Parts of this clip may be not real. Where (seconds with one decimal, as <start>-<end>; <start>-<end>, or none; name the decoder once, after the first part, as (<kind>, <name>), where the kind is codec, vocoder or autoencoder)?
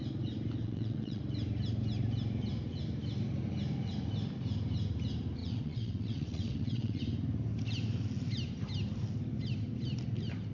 0.6-1.2 (vocoder, WaveNeXt); 5.4-7.0